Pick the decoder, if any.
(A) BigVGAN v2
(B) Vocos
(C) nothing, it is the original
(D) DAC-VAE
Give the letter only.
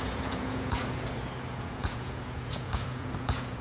B